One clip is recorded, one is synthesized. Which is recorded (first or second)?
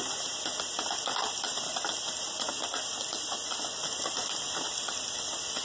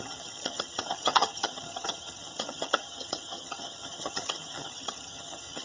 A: first